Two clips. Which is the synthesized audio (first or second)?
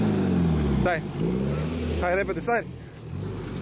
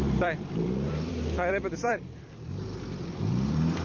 second